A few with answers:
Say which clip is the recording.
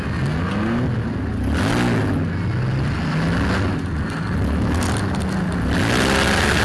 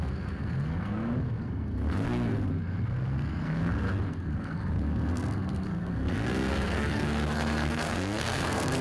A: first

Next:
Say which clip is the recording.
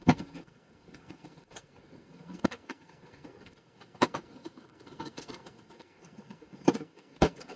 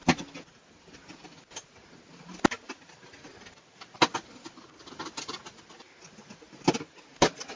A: second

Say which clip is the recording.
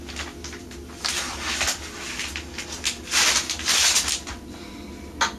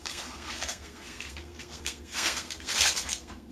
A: first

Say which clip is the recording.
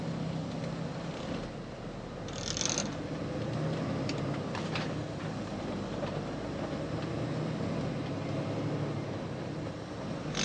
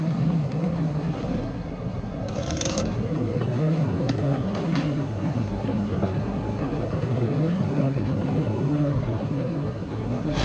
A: first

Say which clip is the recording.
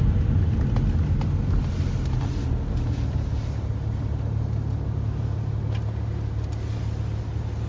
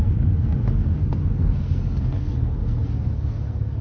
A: first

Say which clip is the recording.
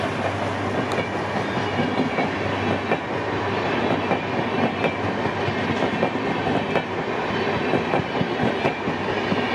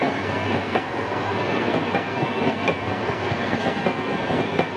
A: first